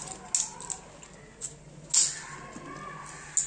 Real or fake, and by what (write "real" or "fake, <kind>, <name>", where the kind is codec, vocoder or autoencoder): real